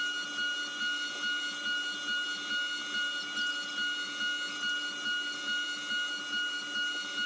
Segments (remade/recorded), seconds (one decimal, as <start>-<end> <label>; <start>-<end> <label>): 0.0-7.3 recorded